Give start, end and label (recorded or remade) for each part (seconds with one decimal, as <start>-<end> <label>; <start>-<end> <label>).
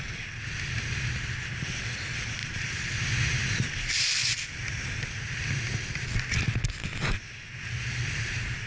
0.0-2.4 recorded; 2.4-2.9 remade; 2.9-8.7 recorded